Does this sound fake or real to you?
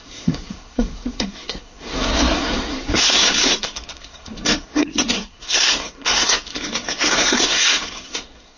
fake